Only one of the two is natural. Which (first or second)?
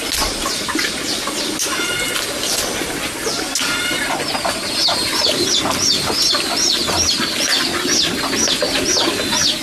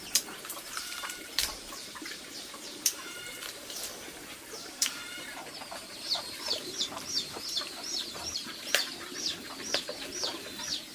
first